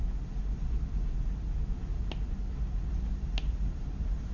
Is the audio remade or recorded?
recorded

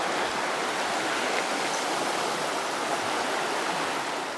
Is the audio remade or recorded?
recorded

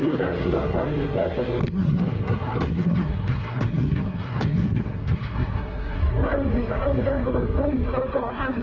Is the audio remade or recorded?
remade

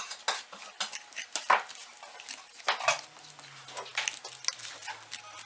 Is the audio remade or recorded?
recorded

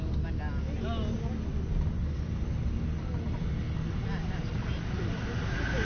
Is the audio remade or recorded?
recorded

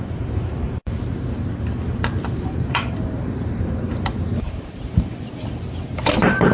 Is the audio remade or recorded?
remade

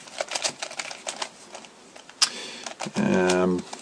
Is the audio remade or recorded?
recorded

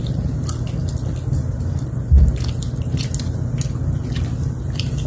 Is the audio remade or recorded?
recorded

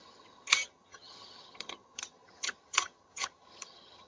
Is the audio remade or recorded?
remade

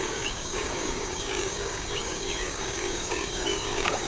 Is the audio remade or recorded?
remade